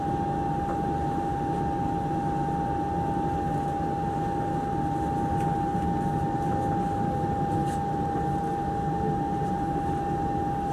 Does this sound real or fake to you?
real